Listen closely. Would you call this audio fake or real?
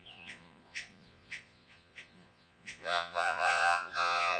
fake